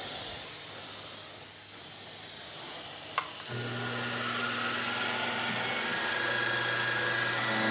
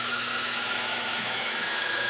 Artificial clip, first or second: second